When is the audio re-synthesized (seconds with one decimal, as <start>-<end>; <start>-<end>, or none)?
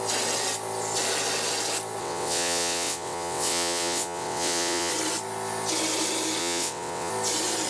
2.0-4.9; 6.4-7.1